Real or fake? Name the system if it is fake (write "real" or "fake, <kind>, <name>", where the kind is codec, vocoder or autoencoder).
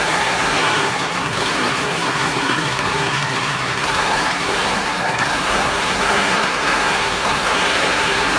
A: fake, codec, SNAC